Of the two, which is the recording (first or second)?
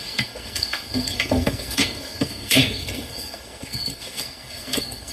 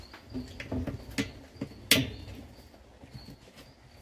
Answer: second